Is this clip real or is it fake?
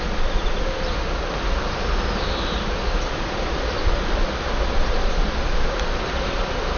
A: real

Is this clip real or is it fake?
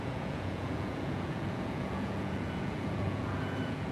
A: fake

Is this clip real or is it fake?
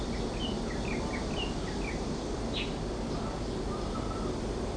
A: real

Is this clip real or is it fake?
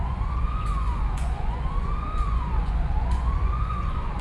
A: fake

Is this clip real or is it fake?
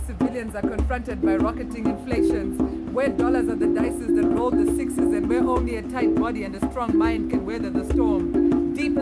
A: real